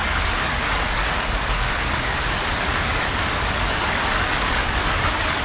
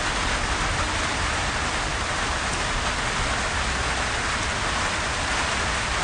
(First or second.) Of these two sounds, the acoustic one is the second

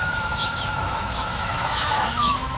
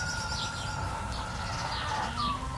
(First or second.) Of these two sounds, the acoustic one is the second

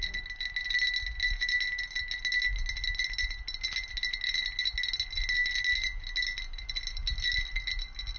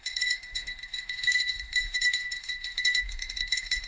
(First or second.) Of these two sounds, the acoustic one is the first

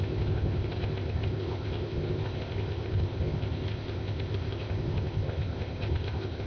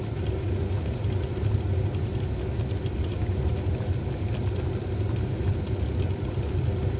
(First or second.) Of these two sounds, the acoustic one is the second